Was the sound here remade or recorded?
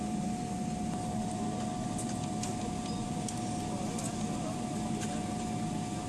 recorded